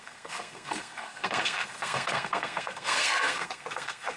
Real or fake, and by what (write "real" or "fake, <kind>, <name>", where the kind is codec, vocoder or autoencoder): fake, codec, SNAC